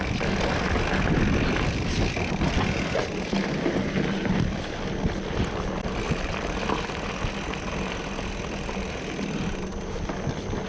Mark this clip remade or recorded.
recorded